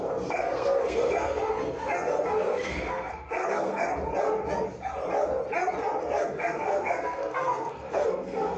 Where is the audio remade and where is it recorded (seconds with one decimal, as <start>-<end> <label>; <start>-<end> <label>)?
0.0-3.9 remade; 3.9-6.0 recorded; 6.0-8.6 remade